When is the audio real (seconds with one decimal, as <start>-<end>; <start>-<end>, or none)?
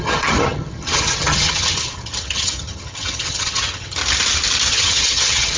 4.0-4.7